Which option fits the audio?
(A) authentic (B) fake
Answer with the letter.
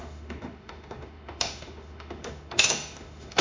B